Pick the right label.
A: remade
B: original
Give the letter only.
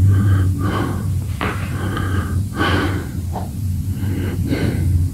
A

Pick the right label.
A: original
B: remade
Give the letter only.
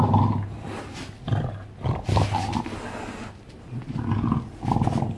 A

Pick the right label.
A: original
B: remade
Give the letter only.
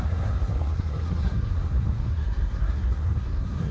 B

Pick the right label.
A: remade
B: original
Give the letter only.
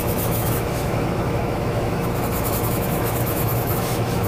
A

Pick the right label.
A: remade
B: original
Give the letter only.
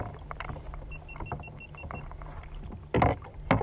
B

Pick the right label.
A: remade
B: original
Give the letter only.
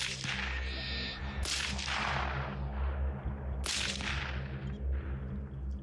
B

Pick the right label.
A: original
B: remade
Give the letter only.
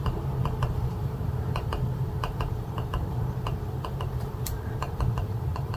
B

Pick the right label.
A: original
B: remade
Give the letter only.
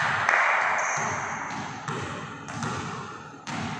A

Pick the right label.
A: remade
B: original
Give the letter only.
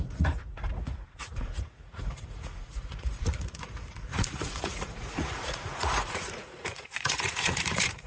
A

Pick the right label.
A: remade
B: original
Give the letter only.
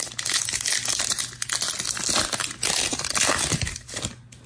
B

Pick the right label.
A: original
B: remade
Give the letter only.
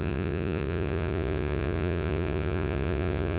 B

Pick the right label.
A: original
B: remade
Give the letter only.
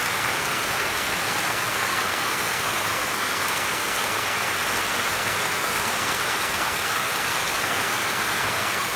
B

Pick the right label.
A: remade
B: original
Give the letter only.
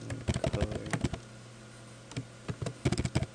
B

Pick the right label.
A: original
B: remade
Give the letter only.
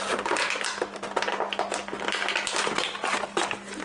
A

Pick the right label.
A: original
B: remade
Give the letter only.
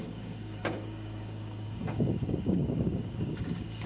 B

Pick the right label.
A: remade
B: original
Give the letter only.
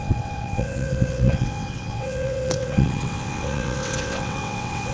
A